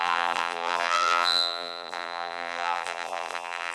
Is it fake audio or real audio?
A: fake